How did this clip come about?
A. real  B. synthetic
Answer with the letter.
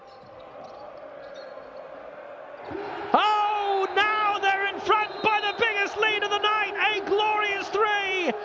A